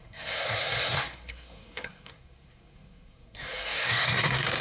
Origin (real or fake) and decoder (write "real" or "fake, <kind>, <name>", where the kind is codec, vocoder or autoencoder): fake, codec, SNAC